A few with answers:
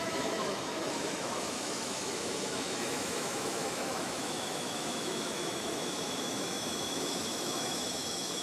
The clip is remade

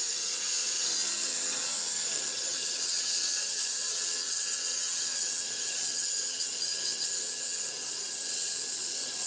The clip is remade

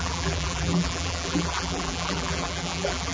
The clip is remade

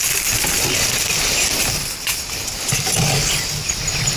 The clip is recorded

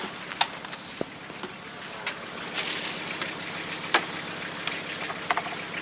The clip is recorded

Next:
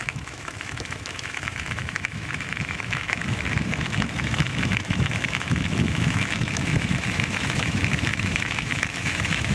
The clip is remade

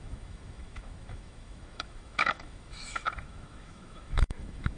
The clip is remade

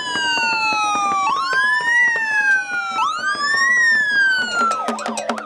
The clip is recorded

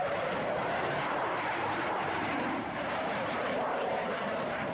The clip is remade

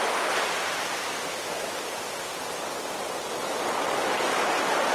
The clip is recorded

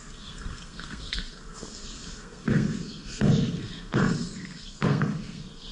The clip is remade